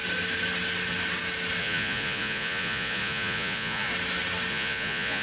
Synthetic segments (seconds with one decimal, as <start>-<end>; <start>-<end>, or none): 1.6-3.9; 4.5-5.2